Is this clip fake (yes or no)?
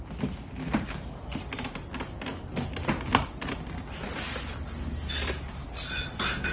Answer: no